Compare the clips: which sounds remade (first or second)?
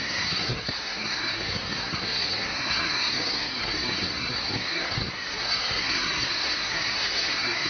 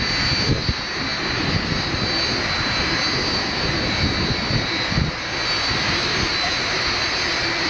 first